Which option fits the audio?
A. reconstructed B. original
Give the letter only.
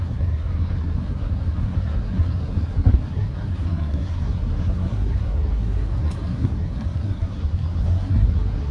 A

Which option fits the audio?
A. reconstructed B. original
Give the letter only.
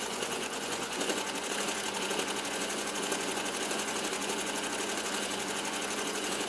A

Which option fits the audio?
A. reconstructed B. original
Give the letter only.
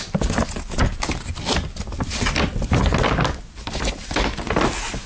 B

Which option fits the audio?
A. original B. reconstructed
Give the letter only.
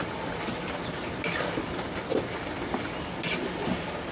A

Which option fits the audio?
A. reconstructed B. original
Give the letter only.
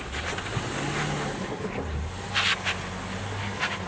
B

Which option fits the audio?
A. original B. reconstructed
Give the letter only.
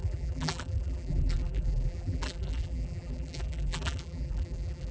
B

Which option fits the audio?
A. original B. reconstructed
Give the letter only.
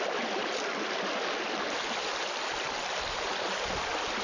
A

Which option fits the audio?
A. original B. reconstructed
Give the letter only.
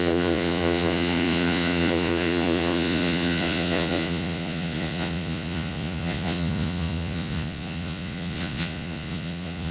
B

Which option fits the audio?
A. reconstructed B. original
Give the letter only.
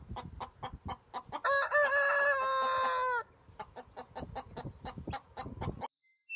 B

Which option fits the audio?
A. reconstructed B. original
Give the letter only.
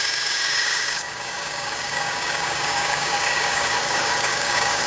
A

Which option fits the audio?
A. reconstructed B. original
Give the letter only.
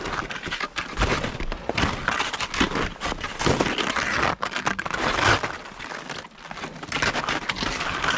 B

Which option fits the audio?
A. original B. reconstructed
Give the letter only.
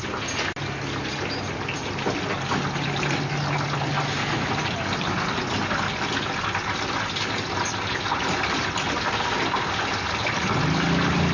A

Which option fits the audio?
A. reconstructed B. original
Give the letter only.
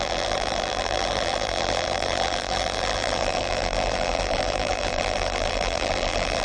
A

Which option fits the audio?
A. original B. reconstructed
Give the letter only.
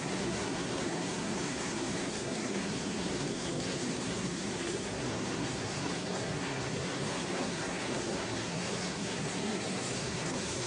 B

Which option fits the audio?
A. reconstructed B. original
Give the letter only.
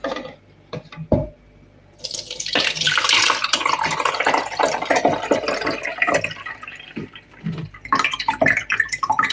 B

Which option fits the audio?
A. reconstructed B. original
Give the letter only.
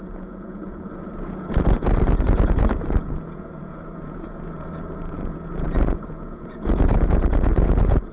A